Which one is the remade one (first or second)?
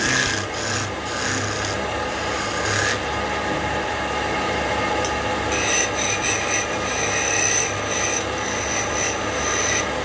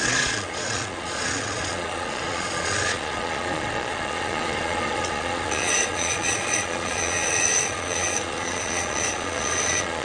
second